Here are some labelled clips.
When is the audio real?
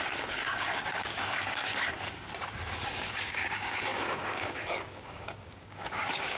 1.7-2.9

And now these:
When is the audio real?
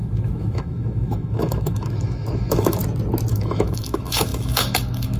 2.8-3.3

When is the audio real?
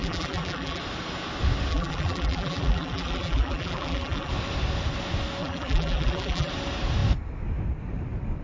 0.8-1.7; 4.3-5.4; 6.5-8.4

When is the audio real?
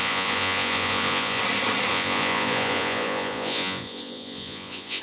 1.4-1.9